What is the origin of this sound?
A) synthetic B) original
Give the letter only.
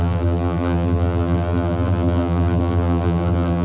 A